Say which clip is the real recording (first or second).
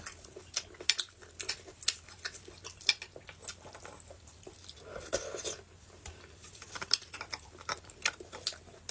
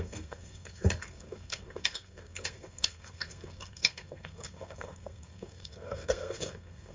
first